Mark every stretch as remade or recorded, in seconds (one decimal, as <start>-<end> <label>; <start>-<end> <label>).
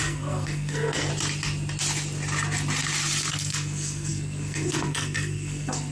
0.0-1.1 remade; 1.1-3.3 recorded; 3.3-5.9 remade